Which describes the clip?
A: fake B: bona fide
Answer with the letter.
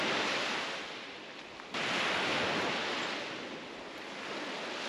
B